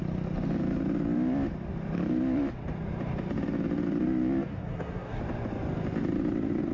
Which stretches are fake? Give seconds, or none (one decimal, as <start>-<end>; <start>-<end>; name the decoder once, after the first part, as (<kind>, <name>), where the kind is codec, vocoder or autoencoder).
4.5-5.2 (codec, SNAC)